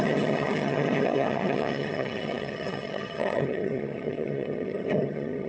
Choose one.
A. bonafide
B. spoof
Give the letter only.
B